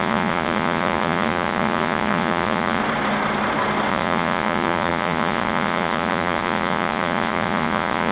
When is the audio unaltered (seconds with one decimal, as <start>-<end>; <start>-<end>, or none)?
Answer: 2.8-3.9

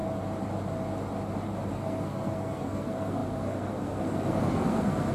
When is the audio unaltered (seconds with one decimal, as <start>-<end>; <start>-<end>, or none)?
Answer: 0.0-1.7